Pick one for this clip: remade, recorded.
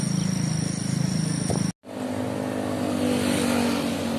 recorded